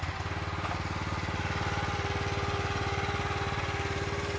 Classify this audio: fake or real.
real